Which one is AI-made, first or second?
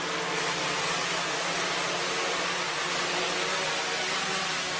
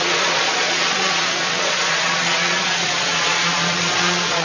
second